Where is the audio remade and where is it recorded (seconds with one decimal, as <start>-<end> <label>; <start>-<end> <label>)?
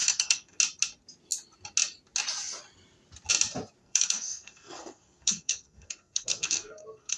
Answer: 0.0-0.6 remade; 0.6-3.8 recorded; 3.8-7.2 remade